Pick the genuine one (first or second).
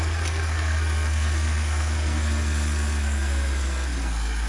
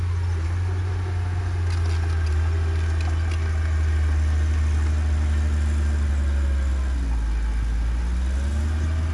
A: second